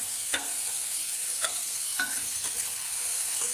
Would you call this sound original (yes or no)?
no